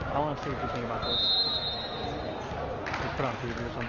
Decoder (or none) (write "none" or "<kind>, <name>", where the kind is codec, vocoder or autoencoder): none